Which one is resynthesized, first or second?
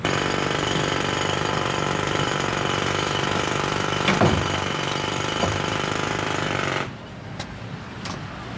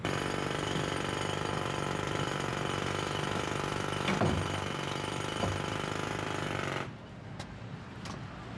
first